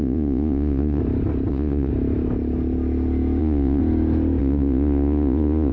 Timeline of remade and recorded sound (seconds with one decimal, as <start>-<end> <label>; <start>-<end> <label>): 0.0-1.0 remade; 1.0-1.5 recorded; 1.5-1.9 remade; 1.9-3.4 recorded; 3.4-3.8 remade; 3.8-4.4 recorded; 4.4-5.7 remade